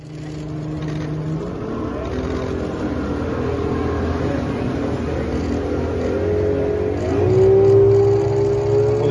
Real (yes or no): yes